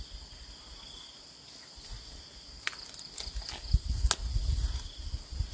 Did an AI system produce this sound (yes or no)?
no